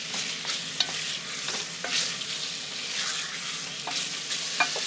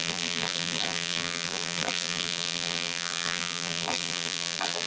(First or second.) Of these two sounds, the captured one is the first